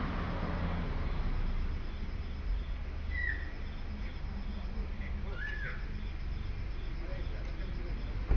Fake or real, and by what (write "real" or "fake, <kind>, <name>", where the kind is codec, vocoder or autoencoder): real